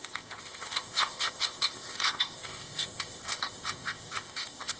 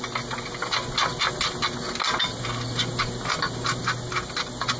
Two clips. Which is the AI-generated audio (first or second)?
first